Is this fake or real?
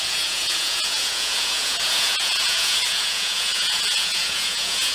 fake